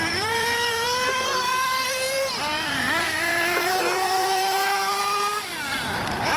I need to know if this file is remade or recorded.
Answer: remade